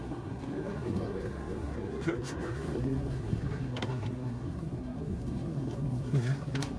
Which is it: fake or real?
fake